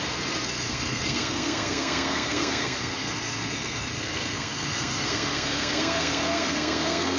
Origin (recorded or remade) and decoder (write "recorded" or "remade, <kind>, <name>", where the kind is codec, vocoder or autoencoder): remade, codec, SNAC